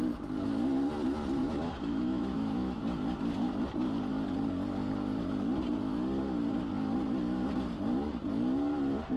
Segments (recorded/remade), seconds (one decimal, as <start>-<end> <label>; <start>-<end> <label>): 0.0-1.4 recorded; 1.4-2.8 remade; 2.8-9.2 recorded